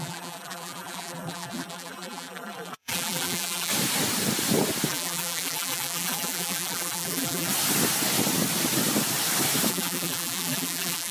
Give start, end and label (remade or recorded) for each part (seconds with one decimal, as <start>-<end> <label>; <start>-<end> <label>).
0.0-3.7 remade; 3.7-4.9 recorded; 4.9-7.5 remade; 7.5-9.7 recorded; 9.7-11.1 remade